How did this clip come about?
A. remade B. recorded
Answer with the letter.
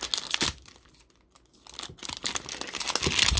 B